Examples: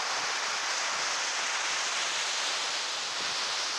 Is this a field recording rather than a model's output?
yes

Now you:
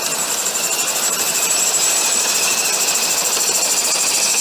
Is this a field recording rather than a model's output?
yes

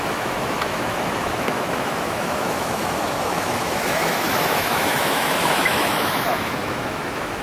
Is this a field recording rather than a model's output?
no